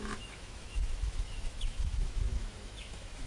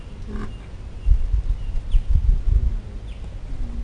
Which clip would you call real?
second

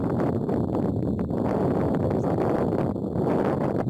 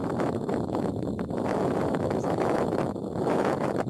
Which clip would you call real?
first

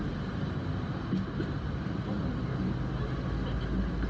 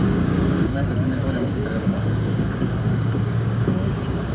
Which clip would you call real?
first